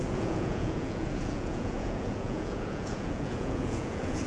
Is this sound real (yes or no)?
no